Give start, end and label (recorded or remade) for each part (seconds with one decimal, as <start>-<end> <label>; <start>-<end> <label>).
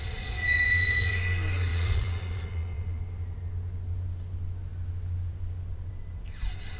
0.0-1.1 remade; 1.1-1.7 recorded; 1.7-3.0 remade; 3.0-6.8 recorded